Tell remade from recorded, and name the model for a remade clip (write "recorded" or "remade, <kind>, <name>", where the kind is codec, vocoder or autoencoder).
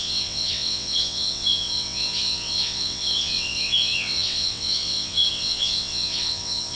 remade, vocoder, WaveNeXt